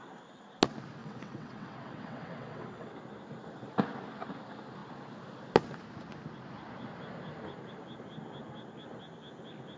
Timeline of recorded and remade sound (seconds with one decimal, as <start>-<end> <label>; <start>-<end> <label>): 0.0-1.0 recorded; 1.0-2.9 remade; 2.9-9.8 recorded